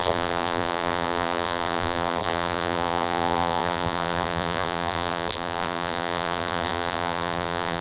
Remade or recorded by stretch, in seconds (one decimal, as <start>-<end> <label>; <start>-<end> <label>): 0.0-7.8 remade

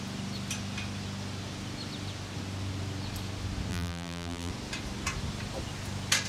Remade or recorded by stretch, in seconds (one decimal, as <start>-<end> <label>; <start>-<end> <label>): 0.0-3.7 recorded; 3.7-4.5 remade; 4.5-6.3 recorded

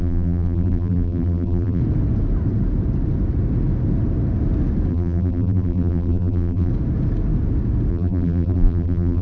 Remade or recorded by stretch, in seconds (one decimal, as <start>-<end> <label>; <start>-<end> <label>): 0.0-1.8 remade; 1.8-4.9 recorded; 4.9-6.7 remade; 6.7-7.9 recorded; 7.9-9.2 remade

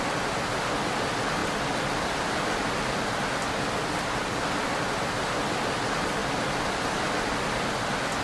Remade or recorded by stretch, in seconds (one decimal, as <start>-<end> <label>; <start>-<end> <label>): 0.0-1.4 recorded; 1.4-3.1 remade; 3.1-8.2 recorded

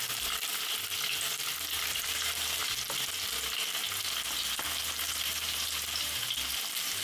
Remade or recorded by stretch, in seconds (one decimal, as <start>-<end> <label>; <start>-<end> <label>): 0.0-0.5 remade; 0.5-1.8 recorded; 1.8-2.6 remade; 2.6-5.0 recorded; 5.0-7.0 remade